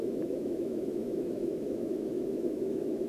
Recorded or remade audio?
remade